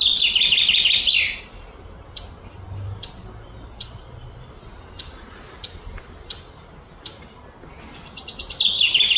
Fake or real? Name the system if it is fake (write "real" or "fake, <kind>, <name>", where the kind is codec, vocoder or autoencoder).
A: real